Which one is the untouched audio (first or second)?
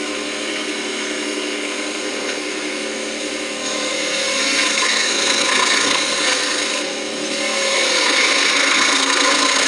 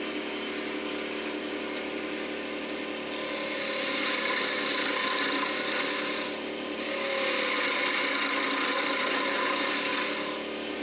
second